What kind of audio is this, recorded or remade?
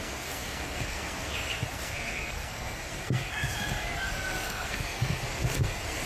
remade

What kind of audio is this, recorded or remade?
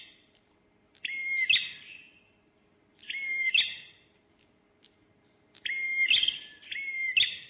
recorded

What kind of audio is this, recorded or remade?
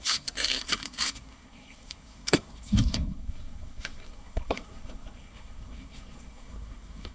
remade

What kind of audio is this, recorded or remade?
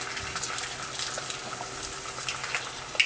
recorded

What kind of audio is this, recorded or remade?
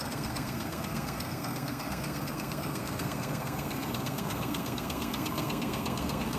remade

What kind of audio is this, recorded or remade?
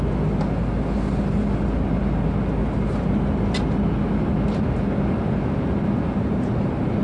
recorded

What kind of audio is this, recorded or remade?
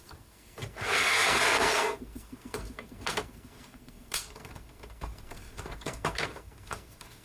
remade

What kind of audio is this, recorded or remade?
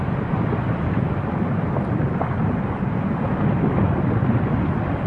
recorded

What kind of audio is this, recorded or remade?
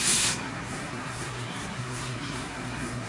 remade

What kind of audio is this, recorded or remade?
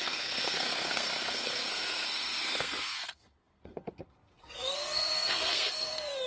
remade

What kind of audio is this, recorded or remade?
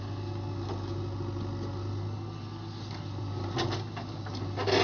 recorded